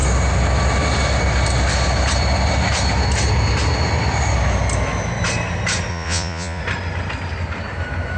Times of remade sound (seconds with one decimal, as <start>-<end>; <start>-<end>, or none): 5.9-6.6